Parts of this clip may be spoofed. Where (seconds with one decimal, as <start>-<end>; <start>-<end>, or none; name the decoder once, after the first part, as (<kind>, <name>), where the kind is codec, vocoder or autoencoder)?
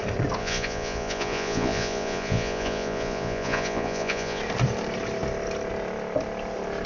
0.4-4.4 (vocoder, Vocos)